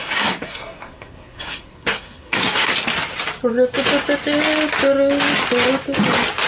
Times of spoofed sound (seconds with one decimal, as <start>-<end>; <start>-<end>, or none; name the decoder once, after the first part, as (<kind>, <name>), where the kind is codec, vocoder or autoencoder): 0.0-2.7 (codec, SNAC)